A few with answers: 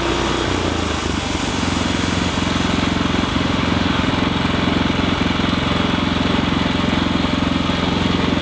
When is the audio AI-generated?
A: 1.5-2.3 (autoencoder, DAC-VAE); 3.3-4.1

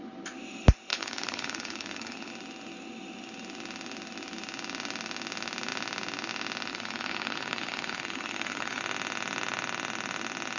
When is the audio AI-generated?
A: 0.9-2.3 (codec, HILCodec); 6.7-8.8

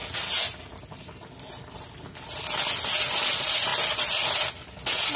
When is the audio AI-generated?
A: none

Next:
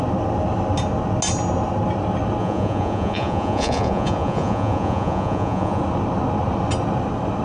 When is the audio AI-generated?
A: 2.4-5.8 (vocoder, Vocos)

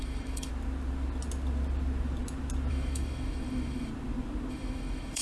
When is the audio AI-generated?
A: 0.0-0.5 (autoencoder, DAC-VAE); 2.7-3.9; 4.5-5.2

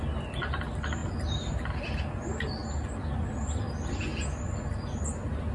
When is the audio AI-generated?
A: none